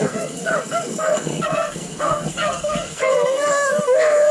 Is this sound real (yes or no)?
no